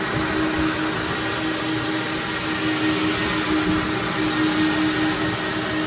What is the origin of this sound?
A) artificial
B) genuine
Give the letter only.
B